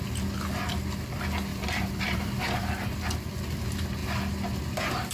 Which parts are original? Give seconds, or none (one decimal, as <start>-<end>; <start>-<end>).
0.0-1.5; 2.3-5.1